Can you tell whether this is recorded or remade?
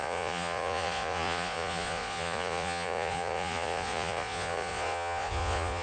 remade